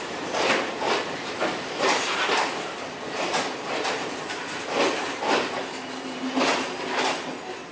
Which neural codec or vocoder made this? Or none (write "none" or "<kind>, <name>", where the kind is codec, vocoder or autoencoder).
none